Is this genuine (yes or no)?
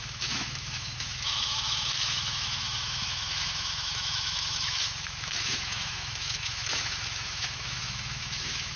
no